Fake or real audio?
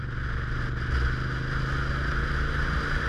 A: real